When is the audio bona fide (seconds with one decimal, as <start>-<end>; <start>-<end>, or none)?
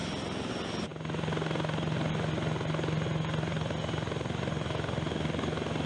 0.0-5.9